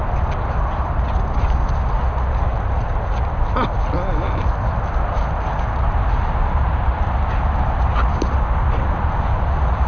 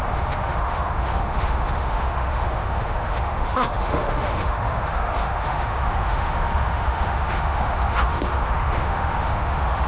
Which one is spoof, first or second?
second